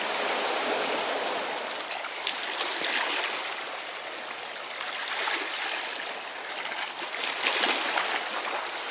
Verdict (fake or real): real